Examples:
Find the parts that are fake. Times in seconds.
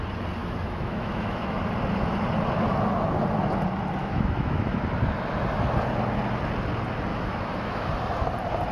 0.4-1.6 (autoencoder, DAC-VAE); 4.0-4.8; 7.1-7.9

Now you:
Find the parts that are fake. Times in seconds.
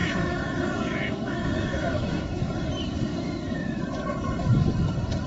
0.0-2.5 (autoencoder, DAC-VAE); 3.1-3.8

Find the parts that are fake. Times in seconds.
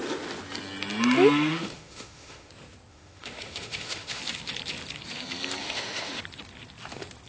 1.5-2.5 (autoencoder, DAC-VAE); 2.9-4.2; 5.6-6.2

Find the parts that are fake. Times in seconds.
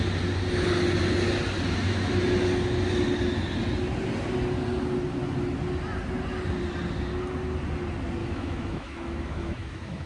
8.2-10.1 (autoencoder, DAC-VAE)